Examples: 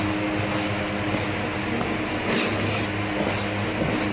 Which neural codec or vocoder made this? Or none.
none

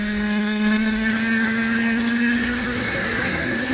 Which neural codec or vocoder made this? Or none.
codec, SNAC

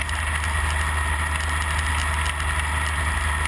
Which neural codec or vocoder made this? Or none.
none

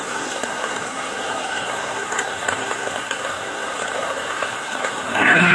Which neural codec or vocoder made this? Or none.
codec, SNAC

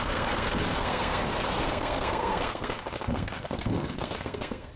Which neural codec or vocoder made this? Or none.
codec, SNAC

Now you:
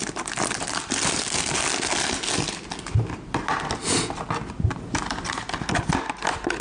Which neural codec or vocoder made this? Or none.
none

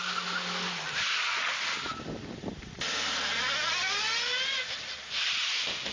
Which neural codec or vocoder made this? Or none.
none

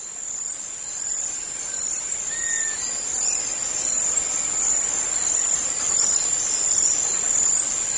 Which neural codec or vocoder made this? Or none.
none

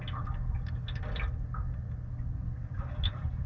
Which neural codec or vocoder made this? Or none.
none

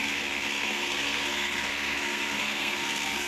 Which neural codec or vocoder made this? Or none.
codec, SNAC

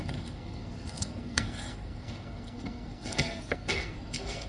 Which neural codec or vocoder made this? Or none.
codec, SNAC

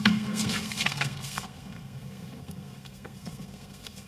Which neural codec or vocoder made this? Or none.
codec, SNAC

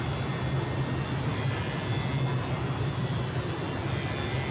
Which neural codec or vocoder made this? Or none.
none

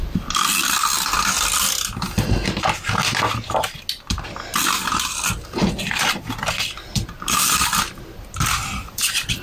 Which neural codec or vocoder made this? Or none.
none